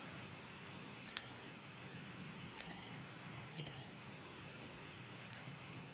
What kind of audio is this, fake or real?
fake